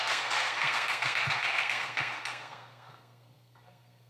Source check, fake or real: fake